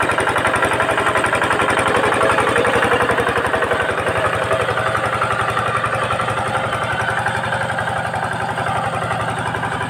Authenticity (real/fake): real